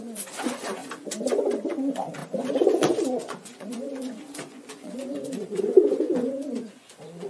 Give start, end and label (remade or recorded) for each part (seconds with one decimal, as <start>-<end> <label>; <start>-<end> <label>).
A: 0.0-0.8 remade; 0.8-1.6 recorded; 1.6-7.3 remade